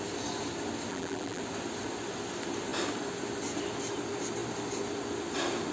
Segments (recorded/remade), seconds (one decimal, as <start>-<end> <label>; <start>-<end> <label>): 0.0-0.9 recorded; 0.9-1.4 remade; 1.4-5.7 recorded